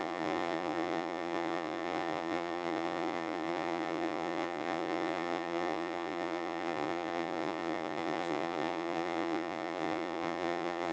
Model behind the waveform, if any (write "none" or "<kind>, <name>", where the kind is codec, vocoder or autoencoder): vocoder, Vocos